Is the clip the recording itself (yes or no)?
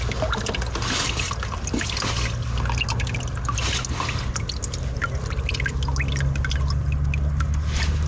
yes